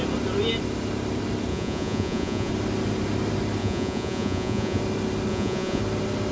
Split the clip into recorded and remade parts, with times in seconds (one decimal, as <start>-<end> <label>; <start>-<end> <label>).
0.0-1.5 recorded; 1.5-2.5 remade; 2.5-3.6 recorded; 3.6-4.8 remade; 4.8-5.3 recorded; 5.3-5.8 remade; 5.8-6.3 recorded